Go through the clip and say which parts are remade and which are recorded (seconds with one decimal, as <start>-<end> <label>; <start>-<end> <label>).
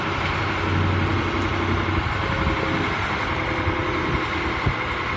0.0-5.2 recorded